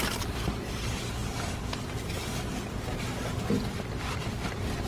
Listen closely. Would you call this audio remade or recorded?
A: recorded